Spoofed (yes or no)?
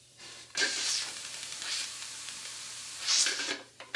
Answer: yes